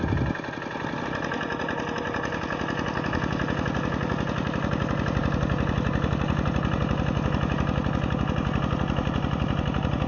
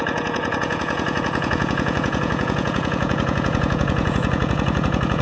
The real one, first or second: first